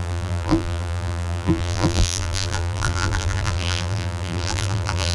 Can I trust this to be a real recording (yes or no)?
no